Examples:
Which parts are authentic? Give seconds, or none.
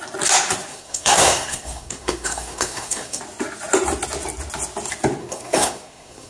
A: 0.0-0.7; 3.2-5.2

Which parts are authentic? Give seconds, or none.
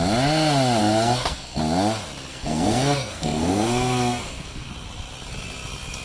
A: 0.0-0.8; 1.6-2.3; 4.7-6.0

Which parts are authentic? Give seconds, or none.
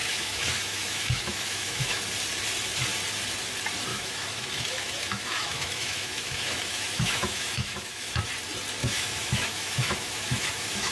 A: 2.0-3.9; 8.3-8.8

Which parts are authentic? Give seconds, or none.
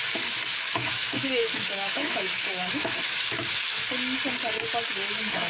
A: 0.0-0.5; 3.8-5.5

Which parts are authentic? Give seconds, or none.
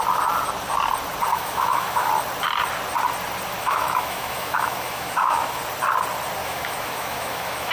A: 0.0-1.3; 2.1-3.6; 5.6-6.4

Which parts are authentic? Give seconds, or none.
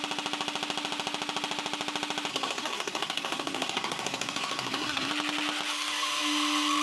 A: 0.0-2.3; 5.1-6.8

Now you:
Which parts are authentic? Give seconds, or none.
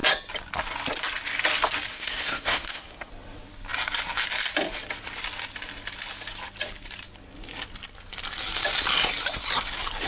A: 0.0-1.9; 3.1-10.1